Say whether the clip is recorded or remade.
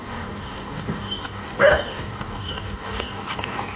remade